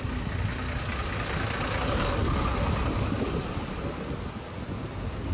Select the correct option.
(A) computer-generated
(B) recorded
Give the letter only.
B